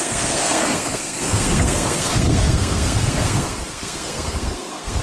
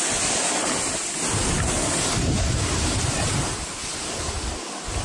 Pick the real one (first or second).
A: second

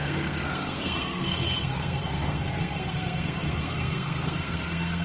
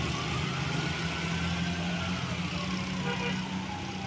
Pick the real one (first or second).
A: second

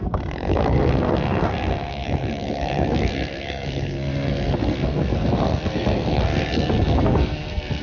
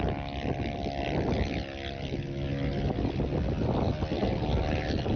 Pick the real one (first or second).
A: second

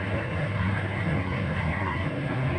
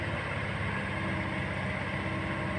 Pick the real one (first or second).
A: second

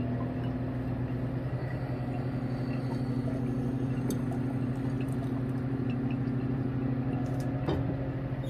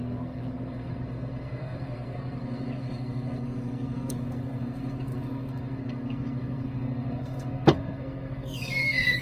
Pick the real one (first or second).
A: first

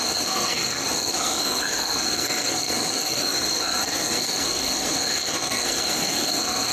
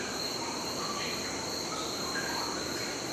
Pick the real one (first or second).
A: second